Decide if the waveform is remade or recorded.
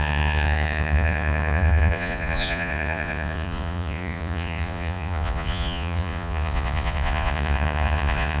remade